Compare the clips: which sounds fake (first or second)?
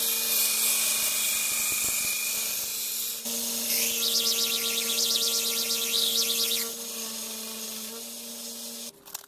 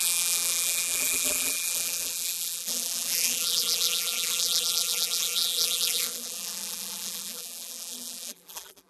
second